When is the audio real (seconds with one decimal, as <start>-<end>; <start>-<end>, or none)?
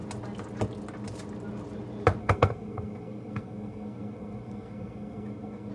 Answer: 0.0-2.2